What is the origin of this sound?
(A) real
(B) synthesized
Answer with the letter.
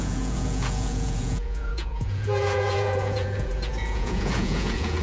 B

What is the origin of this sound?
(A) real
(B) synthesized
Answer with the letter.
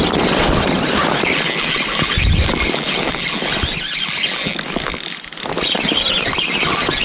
A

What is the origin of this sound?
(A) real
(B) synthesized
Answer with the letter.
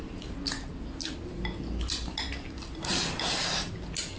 A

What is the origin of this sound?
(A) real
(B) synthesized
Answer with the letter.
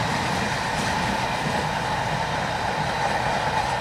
A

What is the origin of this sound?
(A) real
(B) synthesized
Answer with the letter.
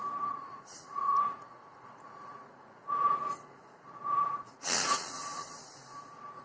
B